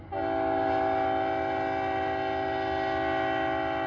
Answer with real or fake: real